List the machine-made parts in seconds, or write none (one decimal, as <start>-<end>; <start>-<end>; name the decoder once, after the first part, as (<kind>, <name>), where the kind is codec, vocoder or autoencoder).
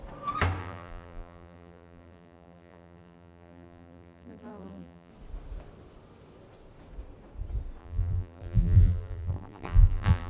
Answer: 0.6-5.1 (vocoder, BigVGAN v2); 7.8-10.3